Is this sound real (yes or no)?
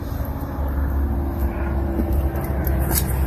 yes